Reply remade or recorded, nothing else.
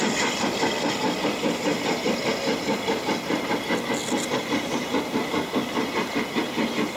recorded